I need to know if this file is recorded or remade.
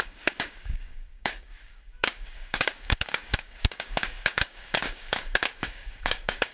remade